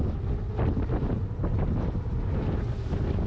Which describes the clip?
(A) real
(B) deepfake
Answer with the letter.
A